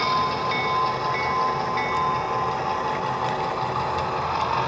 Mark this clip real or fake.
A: real